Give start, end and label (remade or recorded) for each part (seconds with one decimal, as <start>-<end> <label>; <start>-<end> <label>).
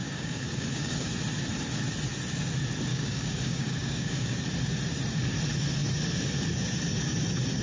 0.0-1.1 remade; 1.1-2.9 recorded; 2.9-4.4 remade; 4.4-7.6 recorded